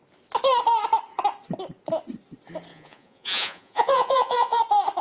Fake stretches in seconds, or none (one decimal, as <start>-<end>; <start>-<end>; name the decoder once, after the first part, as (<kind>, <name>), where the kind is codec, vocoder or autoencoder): 2.7-4.6 (vocoder, Vocos)

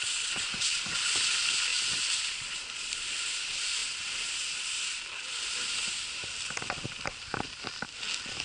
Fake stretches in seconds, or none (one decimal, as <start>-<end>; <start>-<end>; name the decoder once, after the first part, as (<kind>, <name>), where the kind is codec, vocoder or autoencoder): none

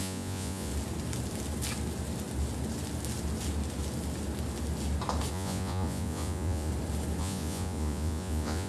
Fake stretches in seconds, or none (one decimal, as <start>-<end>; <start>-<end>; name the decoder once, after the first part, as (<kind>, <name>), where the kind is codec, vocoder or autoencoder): 0.0-0.7 (vocoder, Vocos); 5.3-6.7; 7.2-8.7

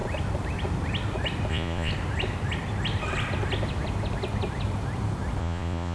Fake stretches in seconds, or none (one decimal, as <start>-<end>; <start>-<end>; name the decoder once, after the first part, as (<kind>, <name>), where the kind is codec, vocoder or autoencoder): 1.5-1.9 (vocoder, Vocos); 5.4-5.9